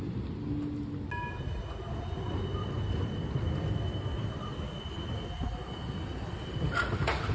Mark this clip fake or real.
real